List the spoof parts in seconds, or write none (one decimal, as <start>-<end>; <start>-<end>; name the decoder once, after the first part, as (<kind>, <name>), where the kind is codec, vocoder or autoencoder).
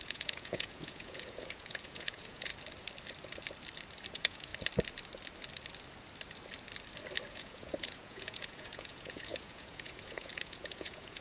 0.0-2.5 (vocoder, Vocos); 4.1-4.5; 7.3-11.2